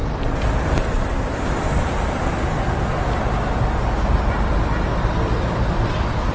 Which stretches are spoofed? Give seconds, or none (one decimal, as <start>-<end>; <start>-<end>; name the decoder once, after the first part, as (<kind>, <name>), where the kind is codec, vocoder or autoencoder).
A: 0.0-6.3 (vocoder, BigVGAN v2)